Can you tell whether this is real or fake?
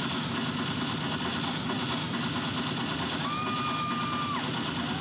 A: real